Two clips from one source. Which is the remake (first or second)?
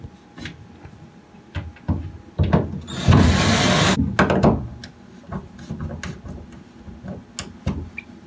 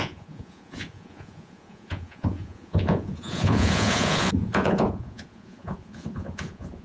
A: second